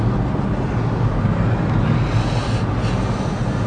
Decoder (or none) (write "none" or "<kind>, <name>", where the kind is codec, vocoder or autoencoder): none